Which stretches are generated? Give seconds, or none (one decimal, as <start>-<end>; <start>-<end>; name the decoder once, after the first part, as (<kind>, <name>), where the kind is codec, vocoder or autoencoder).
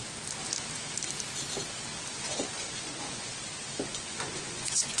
2.1-3.3 (vocoder, Vocos); 3.9-5.0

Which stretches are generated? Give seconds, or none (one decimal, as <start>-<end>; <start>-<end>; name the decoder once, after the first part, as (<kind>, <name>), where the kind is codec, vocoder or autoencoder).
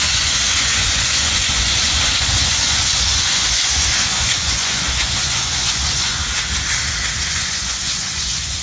0.0-6.2 (vocoder, Vocos); 7.3-8.6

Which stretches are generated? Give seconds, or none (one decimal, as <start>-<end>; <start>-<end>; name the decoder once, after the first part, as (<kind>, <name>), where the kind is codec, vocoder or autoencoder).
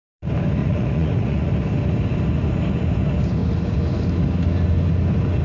0.6-1.5 (vocoder, Vocos)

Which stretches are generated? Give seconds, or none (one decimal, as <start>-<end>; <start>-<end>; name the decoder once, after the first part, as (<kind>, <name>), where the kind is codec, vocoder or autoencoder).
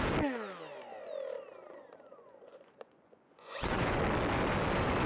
1.6-4.0 (vocoder, Vocos)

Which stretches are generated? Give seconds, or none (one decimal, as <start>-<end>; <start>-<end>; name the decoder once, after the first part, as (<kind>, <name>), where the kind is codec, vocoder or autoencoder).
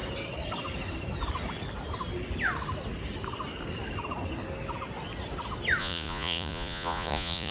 5.8-7.5 (vocoder, Vocos)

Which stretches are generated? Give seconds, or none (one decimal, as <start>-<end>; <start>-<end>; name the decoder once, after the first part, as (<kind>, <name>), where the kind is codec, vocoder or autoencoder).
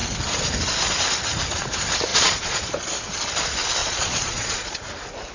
2.1-2.7 (vocoder, Vocos); 3.8-4.8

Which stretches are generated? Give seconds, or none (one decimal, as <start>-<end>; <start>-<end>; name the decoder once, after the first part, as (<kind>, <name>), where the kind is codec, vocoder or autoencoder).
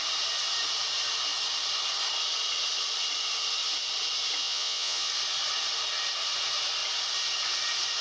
4.4-5.1 (vocoder, Vocos)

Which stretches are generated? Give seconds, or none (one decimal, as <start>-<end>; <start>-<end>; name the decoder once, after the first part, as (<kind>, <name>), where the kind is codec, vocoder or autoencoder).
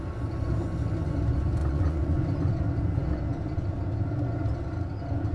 1.6-2.5 (vocoder, Vocos)